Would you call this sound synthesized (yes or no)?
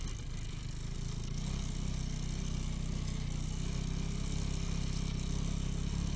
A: no